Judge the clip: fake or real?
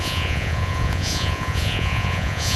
fake